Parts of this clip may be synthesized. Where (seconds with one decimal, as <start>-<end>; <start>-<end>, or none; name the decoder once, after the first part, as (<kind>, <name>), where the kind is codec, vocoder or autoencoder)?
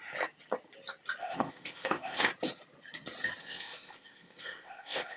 1.2-2.3 (codec, ZipCodec); 3.4-5.2